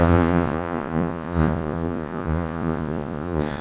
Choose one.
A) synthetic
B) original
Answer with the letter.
A